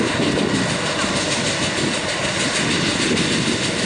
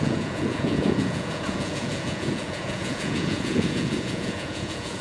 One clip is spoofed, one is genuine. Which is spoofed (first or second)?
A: second